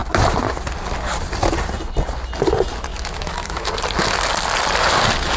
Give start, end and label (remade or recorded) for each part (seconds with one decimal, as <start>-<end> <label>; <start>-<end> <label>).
0.0-2.9 recorded; 2.9-3.7 remade; 3.7-5.4 recorded